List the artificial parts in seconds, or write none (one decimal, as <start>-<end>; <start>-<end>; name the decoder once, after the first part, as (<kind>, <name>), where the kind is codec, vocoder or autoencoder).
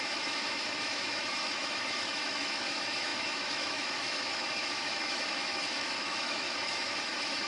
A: 0.0-7.5 (autoencoder, DAC-VAE)